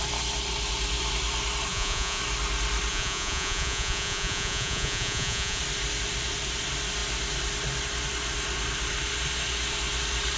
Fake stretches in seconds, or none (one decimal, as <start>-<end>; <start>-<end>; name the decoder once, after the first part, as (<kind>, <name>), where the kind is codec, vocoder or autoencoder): 1.7-2.2 (vocoder, Vocos); 2.9-5.6